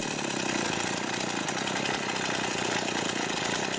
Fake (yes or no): no